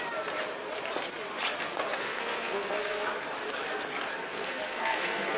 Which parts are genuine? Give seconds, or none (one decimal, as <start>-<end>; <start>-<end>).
0.0-2.0; 3.1-4.3